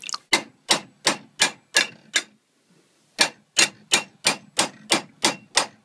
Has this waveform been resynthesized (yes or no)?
no